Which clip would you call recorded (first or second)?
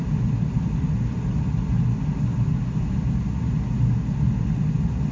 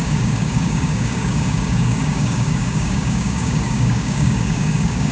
first